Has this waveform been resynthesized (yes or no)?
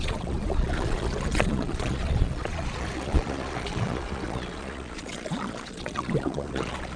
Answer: yes